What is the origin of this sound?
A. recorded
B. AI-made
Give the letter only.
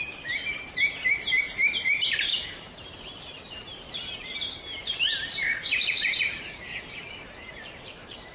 B